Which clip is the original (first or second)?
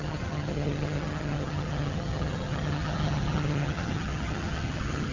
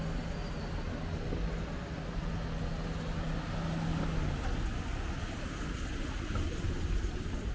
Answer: second